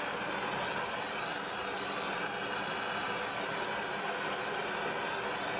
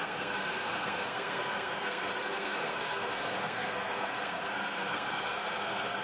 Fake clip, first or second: second